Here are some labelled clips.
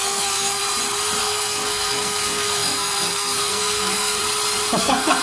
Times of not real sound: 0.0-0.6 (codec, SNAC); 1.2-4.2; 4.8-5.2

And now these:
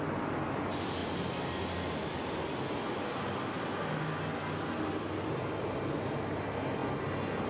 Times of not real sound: none